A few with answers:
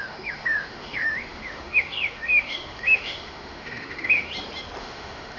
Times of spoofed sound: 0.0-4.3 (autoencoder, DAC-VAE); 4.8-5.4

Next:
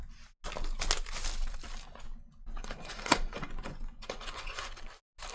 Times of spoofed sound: 2.6-4.7 (vocoder, Vocos)